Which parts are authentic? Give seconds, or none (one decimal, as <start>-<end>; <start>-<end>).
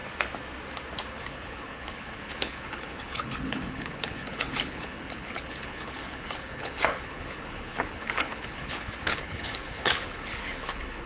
0.0-1.1